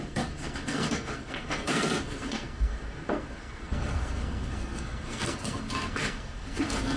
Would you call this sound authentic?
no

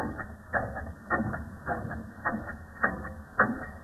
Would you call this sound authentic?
no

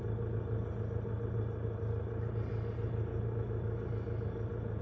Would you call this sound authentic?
yes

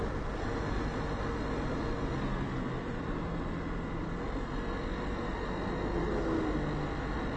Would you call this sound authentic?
yes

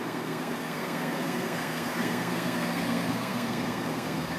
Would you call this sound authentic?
no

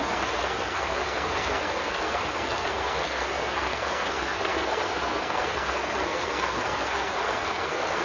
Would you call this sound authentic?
no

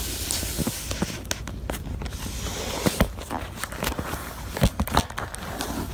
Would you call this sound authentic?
yes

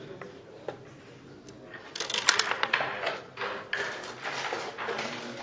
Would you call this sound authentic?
yes